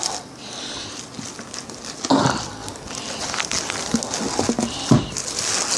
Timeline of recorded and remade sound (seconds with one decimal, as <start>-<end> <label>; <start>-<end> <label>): 0.0-5.8 recorded

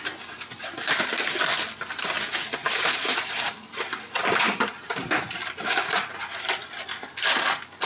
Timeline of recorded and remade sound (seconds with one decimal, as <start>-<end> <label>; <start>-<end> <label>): 0.0-2.6 recorded; 2.6-6.2 remade; 6.2-7.9 recorded

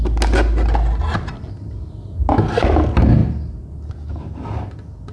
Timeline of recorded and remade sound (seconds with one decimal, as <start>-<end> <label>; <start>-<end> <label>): 0.0-5.1 recorded